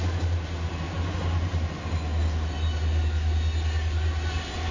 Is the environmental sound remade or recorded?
recorded